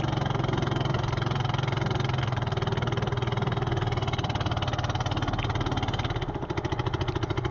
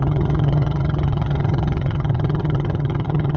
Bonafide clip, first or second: first